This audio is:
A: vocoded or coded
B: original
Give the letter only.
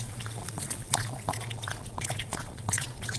A